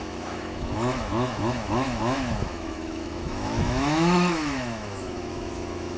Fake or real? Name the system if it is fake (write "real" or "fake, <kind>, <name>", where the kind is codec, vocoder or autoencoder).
fake, autoencoder, DAC-VAE